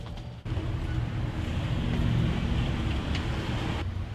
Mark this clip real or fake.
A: real